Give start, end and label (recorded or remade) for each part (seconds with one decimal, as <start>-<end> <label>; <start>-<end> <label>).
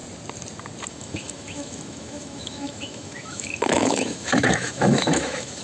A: 0.0-0.9 recorded; 0.9-5.6 remade